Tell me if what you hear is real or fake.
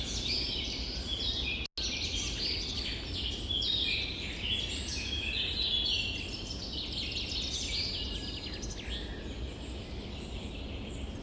real